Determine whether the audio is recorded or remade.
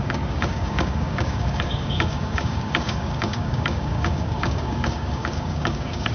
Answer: remade